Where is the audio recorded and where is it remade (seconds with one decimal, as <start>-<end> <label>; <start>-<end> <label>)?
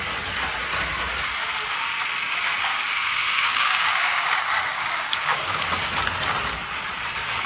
0.0-2.7 recorded; 2.7-5.6 remade; 5.6-7.5 recorded